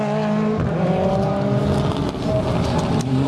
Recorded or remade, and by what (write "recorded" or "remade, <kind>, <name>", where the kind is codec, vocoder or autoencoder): recorded